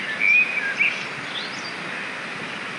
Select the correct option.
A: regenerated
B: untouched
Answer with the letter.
B